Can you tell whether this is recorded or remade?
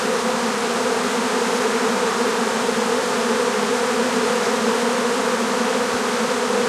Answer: recorded